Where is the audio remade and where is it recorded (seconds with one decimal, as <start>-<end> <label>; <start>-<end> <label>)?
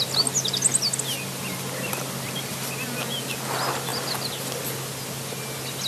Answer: 0.0-5.9 recorded